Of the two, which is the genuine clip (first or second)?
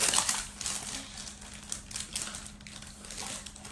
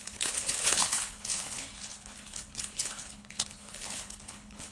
first